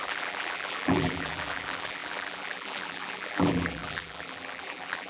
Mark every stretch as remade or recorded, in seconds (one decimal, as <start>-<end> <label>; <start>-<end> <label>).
0.0-5.1 remade